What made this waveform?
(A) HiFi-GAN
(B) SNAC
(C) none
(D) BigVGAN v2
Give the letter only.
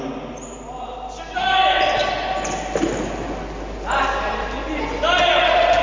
C